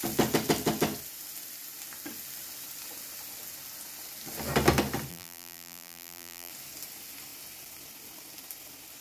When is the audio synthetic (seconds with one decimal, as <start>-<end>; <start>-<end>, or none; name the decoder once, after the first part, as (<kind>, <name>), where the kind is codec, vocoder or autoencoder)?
5.1-6.5 (vocoder, BigVGAN v2)